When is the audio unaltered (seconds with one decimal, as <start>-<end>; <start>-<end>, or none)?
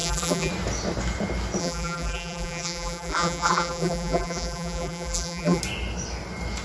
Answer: 0.5-1.6; 5.6-6.6